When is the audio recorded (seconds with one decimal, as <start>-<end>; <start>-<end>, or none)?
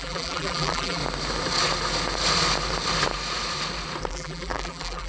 1.0-4.1